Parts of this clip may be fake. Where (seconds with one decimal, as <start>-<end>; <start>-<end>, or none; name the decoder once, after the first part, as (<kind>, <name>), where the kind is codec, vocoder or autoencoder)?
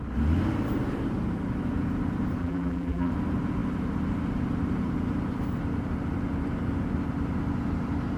2.4-3.1 (vocoder, BigVGAN v2)